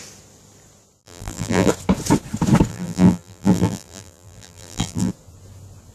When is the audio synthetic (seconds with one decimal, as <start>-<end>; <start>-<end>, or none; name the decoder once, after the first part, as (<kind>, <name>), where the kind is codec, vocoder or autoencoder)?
1.0-1.7 (vocoder, BigVGAN v2); 2.7-5.1